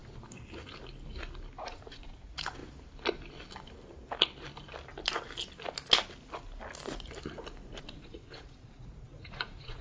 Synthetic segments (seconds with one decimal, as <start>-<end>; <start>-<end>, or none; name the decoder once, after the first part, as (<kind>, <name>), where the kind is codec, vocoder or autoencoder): 1.6-2.6 (vocoder, Vocos); 7.8-9.8